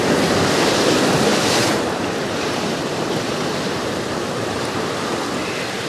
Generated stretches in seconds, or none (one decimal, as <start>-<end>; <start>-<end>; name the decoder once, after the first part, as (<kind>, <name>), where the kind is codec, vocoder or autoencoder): 1.3-4.8 (vocoder, BigVGAN v2)